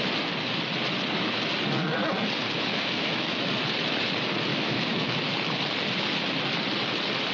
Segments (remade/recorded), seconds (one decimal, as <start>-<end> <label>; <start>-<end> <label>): 0.0-2.7 recorded; 2.7-3.5 remade; 3.5-4.5 recorded; 4.5-5.2 remade; 5.2-7.3 recorded